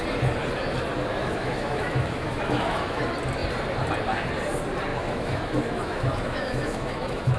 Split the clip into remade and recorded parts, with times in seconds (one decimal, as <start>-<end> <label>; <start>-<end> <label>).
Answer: 0.0-1.2 recorded; 1.2-3.0 remade; 3.0-4.9 recorded; 4.9-7.4 remade